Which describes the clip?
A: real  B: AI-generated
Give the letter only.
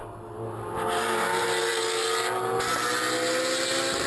A